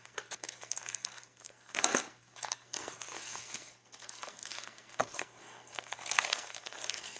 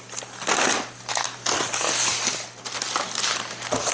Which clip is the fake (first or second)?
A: first